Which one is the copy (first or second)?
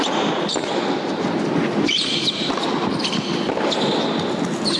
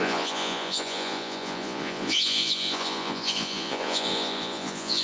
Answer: second